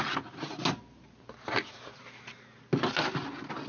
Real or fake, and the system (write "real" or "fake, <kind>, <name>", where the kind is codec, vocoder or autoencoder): real